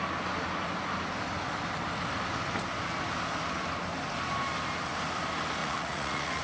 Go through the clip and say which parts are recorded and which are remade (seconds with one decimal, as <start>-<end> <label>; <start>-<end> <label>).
0.0-5.6 recorded; 5.6-6.4 remade

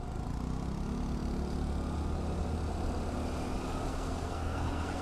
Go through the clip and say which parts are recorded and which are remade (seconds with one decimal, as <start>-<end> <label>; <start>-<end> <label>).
0.0-3.9 recorded; 3.9-5.0 remade